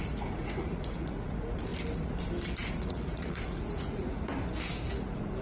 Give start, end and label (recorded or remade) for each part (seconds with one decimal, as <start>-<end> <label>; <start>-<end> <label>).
0.0-1.7 remade; 1.7-2.6 recorded; 2.6-4.3 remade; 4.3-5.0 recorded; 5.0-5.4 remade